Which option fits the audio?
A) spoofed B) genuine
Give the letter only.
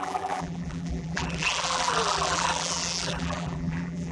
A